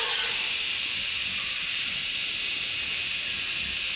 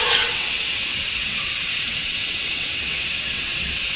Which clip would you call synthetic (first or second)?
second